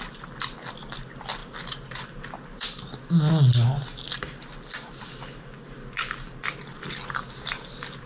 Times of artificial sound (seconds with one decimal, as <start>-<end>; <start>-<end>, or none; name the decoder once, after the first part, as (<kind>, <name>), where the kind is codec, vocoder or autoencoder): none